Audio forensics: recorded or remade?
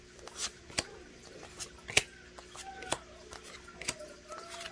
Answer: recorded